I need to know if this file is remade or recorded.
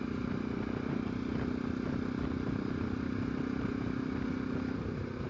recorded